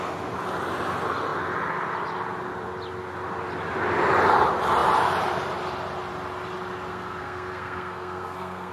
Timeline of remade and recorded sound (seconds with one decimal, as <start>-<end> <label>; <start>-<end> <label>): 0.0-6.9 recorded; 6.9-8.7 remade